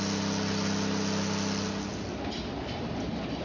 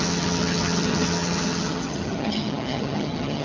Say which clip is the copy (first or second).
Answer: second